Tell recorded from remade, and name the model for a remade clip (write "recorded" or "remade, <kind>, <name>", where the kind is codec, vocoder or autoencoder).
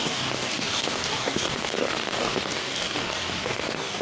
remade, codec, DAC